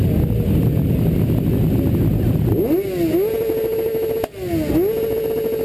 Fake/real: real